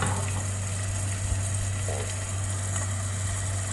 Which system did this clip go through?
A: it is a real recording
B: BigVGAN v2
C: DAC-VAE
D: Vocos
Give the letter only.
A